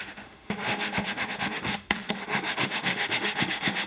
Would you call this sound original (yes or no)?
no